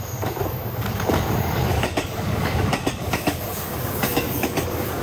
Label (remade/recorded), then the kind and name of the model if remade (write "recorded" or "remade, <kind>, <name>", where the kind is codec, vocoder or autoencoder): remade, codec, DAC